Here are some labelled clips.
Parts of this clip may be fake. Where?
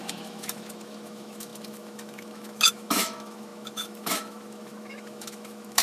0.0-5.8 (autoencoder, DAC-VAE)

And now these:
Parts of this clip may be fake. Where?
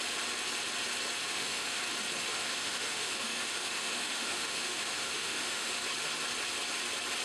1.2-1.8 (autoencoder, DAC-VAE); 2.3-5.8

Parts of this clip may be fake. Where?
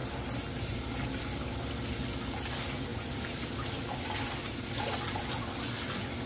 0.0-0.7 (vocoder, BigVGAN v2); 2.9-3.8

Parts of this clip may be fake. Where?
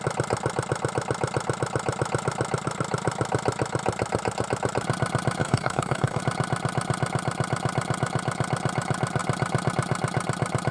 5.4-6.2 (codec, DAC)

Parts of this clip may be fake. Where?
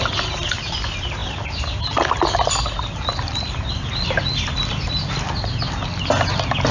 none